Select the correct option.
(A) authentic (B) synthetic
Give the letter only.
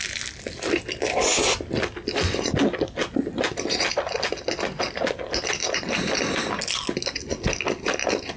A